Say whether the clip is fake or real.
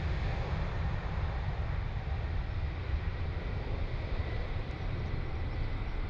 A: real